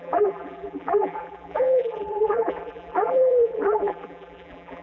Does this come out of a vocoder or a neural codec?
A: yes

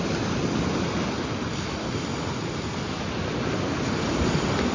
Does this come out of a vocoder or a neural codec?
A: no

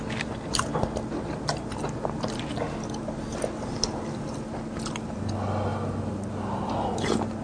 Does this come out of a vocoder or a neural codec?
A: no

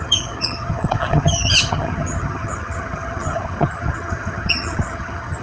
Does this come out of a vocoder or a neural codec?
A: yes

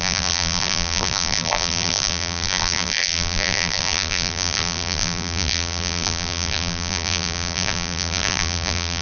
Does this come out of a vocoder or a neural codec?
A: yes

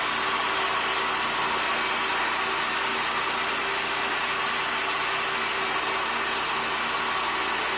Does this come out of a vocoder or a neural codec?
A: no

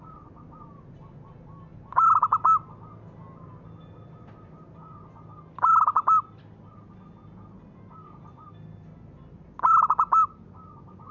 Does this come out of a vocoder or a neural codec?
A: no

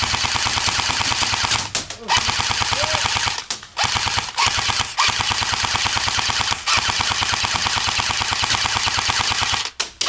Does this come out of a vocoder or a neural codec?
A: no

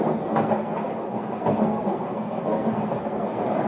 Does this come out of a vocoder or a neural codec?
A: yes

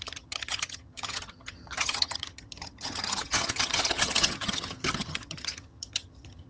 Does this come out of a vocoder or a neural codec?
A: yes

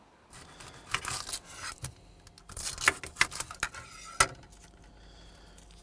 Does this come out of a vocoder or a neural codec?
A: no